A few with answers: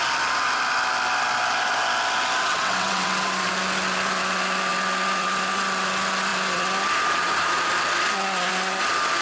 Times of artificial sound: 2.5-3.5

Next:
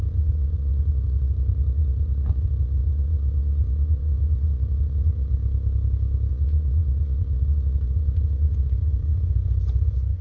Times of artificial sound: 0.0-5.4; 6.3-10.2

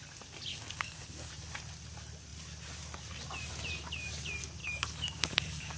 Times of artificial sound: 0.5-1.3; 4.6-5.8

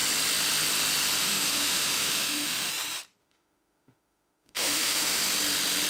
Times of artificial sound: 1.2-2.7; 3.2-5.2

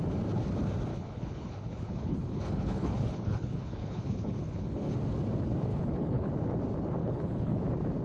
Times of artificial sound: 0.9-4.9; 5.7-6.3; 7.0-7.6

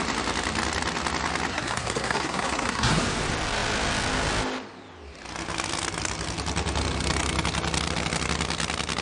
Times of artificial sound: 1.5-3.0